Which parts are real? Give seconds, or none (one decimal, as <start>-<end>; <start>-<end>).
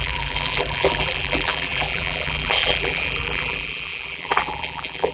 none